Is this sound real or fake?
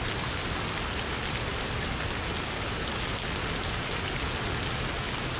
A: real